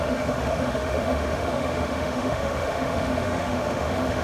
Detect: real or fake fake